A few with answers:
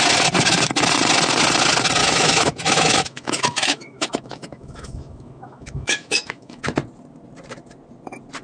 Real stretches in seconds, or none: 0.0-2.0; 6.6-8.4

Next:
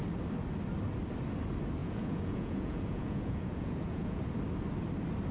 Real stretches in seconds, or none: 0.0-1.8; 4.2-5.3

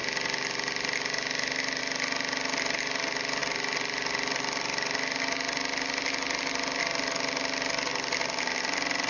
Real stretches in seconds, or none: 0.0-9.1

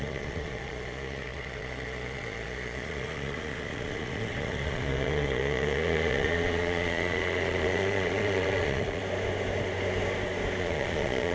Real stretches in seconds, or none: 9.0-10.6

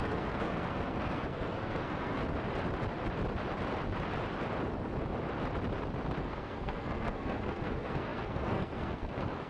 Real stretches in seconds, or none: 2.2-6.2

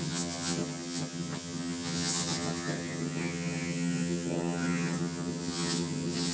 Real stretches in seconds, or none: none

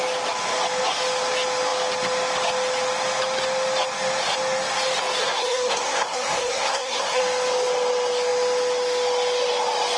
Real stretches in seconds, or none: 0.0-5.2; 7.2-10.0

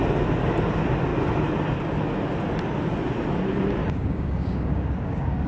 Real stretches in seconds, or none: 0.0-3.8